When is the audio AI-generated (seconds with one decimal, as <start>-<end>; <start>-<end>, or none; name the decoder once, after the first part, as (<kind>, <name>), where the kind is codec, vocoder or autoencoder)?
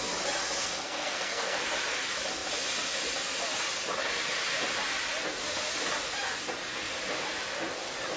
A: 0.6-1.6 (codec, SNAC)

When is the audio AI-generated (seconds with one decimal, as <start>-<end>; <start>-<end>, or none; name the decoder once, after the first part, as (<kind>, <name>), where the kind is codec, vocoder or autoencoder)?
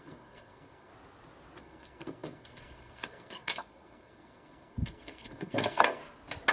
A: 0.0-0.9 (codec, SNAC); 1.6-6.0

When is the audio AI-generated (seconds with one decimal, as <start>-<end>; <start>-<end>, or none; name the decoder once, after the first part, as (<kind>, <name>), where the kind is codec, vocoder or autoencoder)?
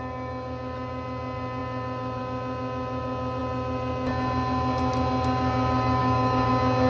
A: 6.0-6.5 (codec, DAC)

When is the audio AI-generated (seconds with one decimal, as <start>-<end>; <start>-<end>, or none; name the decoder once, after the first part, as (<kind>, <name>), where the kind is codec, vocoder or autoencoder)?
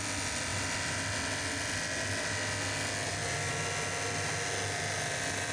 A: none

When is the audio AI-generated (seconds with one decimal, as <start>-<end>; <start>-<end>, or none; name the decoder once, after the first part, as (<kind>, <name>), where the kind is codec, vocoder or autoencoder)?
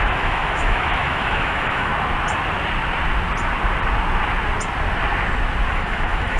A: 0.0-1.9 (autoencoder, DAC-VAE); 5.7-6.4